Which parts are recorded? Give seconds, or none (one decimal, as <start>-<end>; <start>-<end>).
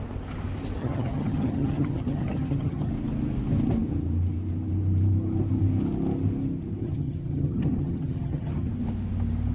0.0-0.8; 2.9-6.8; 8.7-9.5